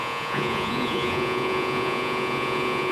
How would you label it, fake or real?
fake